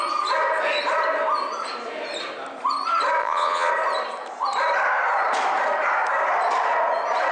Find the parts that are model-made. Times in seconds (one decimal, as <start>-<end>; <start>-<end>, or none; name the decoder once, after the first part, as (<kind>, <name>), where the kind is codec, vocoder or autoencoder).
3.2-3.7 (vocoder, Vocos)

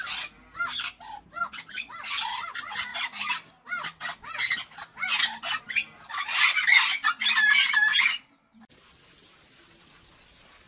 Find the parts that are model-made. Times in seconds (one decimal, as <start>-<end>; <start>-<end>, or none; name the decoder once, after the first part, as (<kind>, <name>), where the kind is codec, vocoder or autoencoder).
none

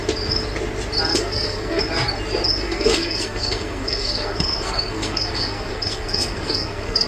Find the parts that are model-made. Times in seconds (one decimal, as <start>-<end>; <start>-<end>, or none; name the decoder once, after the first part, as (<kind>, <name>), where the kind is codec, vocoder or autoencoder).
1.1-1.8 (codec, SNAC); 2.5-7.1

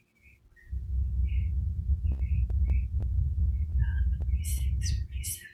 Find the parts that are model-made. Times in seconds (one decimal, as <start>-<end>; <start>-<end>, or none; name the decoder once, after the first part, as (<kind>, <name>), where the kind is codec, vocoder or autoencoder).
none

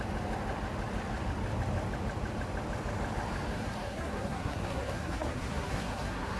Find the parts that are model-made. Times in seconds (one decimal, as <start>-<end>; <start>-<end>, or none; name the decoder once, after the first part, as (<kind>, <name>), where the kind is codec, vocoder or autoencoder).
3.5-6.4 (codec, SNAC)

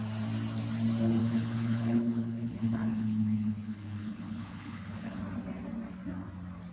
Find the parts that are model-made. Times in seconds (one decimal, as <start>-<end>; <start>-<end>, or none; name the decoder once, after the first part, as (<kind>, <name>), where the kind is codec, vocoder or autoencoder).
1.2-5.2 (codec, HILCodec)